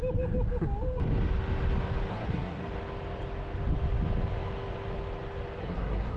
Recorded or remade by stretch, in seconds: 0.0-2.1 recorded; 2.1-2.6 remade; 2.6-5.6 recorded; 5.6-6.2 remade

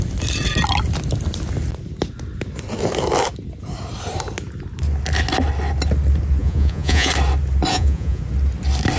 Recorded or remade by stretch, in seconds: 0.0-6.4 recorded; 6.4-7.1 remade; 7.1-7.7 recorded; 7.7-8.2 remade; 8.2-9.0 recorded

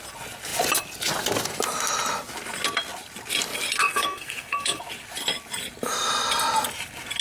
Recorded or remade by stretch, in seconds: 0.0-3.8 recorded; 3.8-4.8 remade; 4.8-7.2 recorded

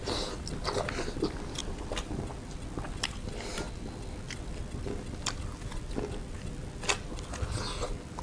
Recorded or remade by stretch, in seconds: 0.0-8.2 recorded

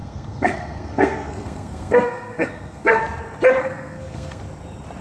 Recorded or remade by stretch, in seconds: 0.0-3.0 remade; 3.0-3.6 recorded; 3.6-4.4 remade; 4.4-5.0 recorded

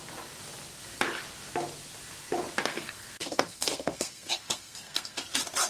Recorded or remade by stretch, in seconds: 0.0-2.6 recorded; 2.6-5.2 remade; 5.2-5.7 recorded

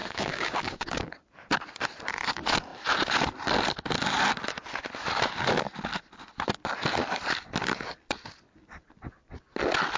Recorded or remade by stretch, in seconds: 0.0-1.1 remade; 1.1-10.0 recorded

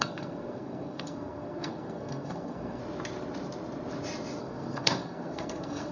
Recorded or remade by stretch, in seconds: 0.0-2.8 remade; 2.8-4.4 recorded; 4.4-5.9 remade